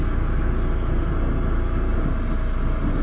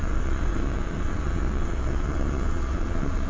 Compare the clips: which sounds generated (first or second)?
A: second